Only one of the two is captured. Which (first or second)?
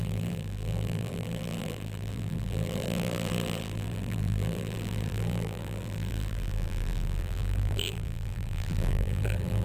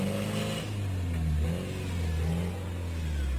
second